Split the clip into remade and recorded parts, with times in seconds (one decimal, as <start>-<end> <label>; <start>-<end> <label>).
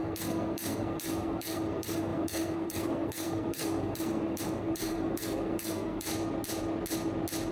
0.0-6.1 remade; 6.1-7.5 recorded